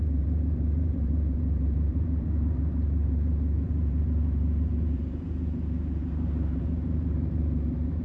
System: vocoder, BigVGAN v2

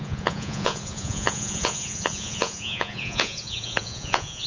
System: vocoder, Vocos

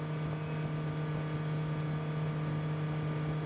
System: none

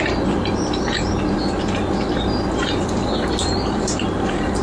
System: none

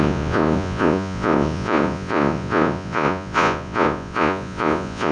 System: vocoder, Vocos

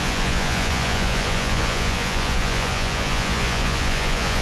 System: vocoder, Vocos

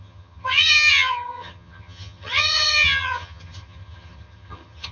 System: vocoder, HiFi-GAN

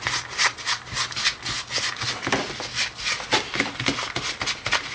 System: none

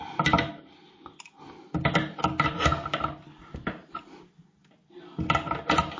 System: none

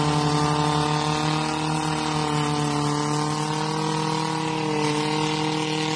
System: none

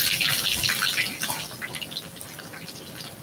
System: none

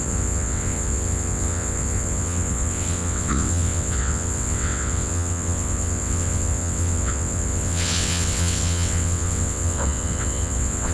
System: vocoder, WaveNeXt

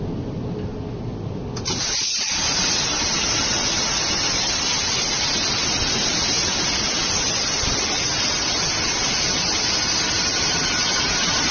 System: none